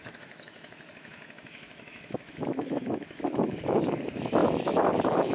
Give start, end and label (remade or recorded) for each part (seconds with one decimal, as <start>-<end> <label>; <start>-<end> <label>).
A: 0.0-5.3 remade